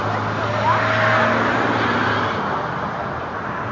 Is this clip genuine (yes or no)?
yes